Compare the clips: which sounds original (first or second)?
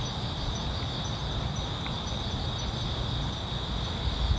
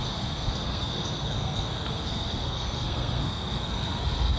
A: first